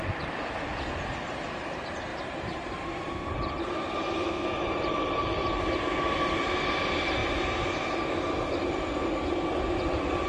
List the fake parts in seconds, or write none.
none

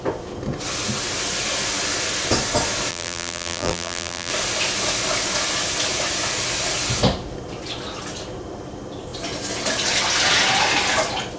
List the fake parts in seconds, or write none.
2.9-4.3

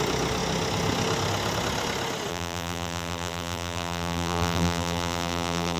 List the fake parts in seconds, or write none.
2.3-5.8

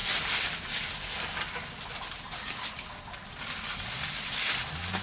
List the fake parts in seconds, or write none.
none